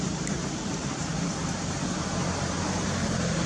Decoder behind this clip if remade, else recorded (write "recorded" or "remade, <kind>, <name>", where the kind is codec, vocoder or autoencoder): remade, vocoder, BigVGAN v2